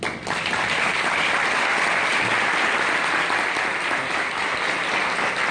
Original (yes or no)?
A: yes